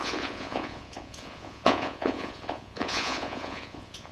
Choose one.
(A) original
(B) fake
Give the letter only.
B